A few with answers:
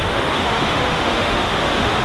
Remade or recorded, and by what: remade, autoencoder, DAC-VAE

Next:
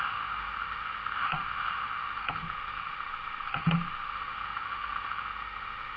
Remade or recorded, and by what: remade, autoencoder, DAC-VAE